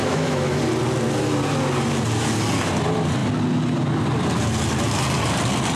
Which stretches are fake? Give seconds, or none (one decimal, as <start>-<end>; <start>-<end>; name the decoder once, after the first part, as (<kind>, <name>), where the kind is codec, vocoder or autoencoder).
0.0-0.6 (autoencoder, DAC-VAE)